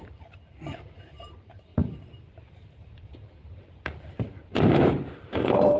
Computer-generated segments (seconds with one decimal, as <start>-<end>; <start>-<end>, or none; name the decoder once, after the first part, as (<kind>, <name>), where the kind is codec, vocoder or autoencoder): 0.0-5.8 (vocoder, BigVGAN v2)